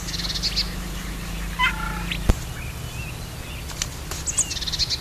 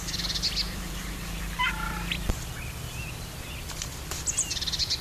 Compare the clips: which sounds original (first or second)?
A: first